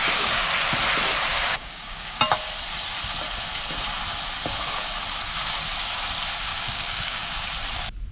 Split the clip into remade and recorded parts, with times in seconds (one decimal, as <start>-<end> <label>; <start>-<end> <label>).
0.0-0.5 remade; 0.5-1.3 recorded; 1.3-2.2 remade; 2.2-6.5 recorded; 6.5-7.3 remade; 7.3-8.1 recorded